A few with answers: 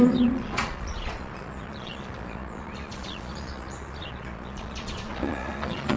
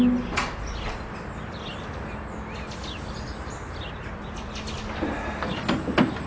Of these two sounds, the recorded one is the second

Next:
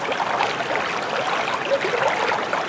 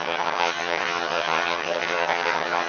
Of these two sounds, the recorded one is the first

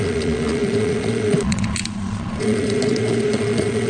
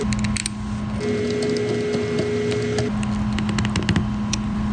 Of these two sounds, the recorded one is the second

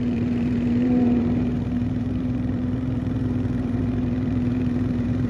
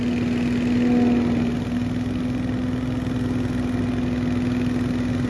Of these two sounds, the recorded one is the second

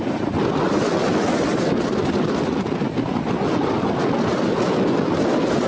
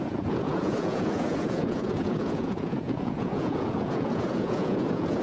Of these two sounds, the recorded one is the first